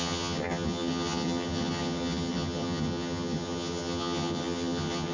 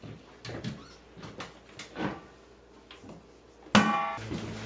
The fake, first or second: first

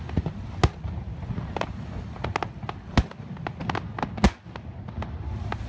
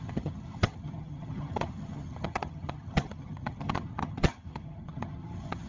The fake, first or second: second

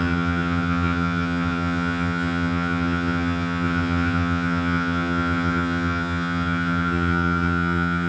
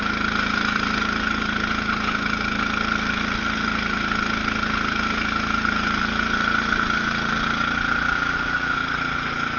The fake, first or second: first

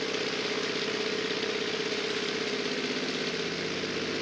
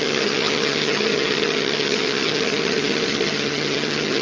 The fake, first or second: second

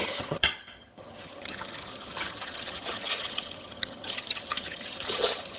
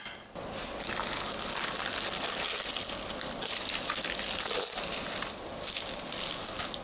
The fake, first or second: first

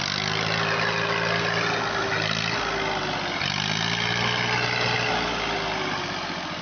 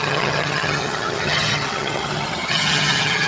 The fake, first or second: second